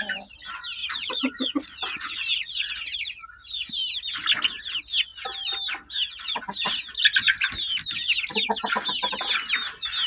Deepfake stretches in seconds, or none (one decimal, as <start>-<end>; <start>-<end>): 0.8-2.7